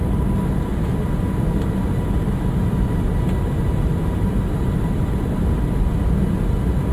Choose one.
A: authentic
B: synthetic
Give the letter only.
A